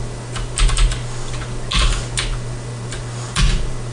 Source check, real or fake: real